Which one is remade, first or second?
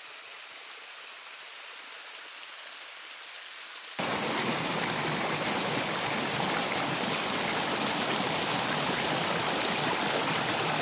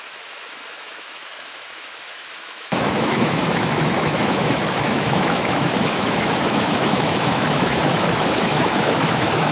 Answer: second